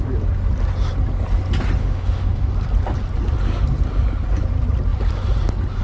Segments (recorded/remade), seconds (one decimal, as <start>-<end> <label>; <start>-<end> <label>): 0.0-1.8 recorded; 1.8-2.5 remade; 2.5-5.8 recorded